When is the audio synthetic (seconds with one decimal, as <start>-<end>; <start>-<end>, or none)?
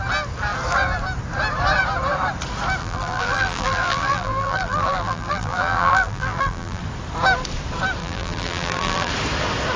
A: 2.8-6.8; 8.0-9.1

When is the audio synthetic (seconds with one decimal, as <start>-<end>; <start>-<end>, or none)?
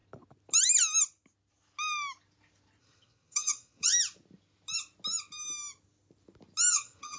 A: 2.8-3.9; 6.7-7.2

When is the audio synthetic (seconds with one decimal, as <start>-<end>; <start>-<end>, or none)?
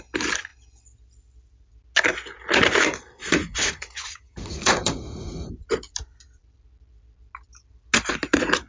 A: 3.2-5.5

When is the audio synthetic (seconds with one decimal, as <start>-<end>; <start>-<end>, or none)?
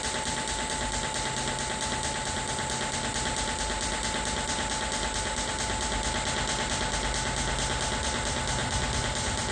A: none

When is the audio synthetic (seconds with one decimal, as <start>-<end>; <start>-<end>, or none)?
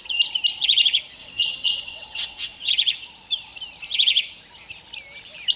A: 1.2-2.7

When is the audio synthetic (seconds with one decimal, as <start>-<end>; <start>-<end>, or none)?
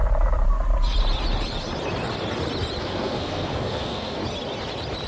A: 2.8-4.2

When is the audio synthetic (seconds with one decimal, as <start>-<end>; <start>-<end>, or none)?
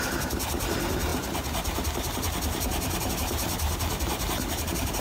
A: none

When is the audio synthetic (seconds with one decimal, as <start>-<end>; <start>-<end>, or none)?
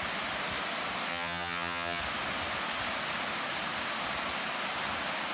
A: 1.1-2.0